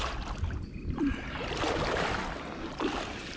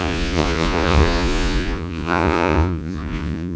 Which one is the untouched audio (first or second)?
first